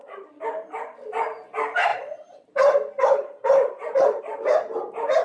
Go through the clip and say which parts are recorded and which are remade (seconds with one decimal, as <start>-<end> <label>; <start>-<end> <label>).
0.0-5.2 remade